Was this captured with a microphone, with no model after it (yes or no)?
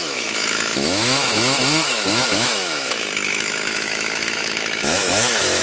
no